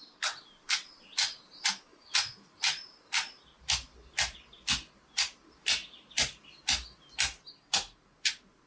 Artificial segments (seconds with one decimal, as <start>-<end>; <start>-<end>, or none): none